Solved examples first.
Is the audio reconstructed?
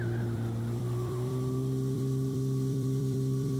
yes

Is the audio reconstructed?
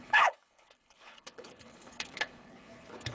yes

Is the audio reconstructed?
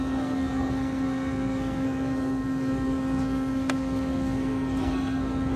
yes